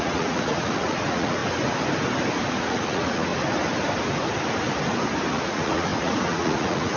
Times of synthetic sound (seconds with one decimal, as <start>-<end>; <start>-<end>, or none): 0.0-1.4; 2.5-3.3; 5.3-7.0